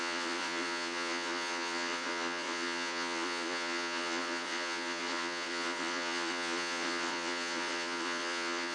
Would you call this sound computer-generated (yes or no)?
yes